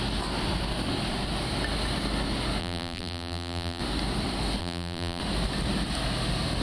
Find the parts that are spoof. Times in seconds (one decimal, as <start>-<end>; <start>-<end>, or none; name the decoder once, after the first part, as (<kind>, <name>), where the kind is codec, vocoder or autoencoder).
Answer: 2.6-3.8 (vocoder, BigVGAN v2); 4.6-5.2